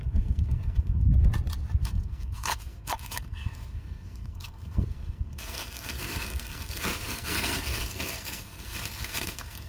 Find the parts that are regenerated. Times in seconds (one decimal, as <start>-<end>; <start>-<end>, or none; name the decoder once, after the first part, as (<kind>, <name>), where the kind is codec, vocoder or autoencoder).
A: 0.0-1.1 (codec, SNAC); 1.8-9.7